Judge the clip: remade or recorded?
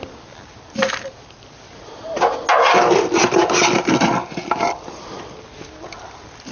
recorded